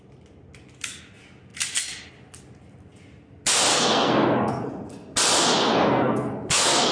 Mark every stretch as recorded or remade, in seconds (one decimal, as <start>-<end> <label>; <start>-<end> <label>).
0.0-3.7 recorded; 3.7-4.7 remade; 4.7-5.6 recorded; 5.6-6.9 remade